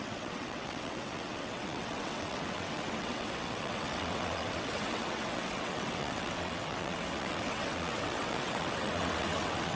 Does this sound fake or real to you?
fake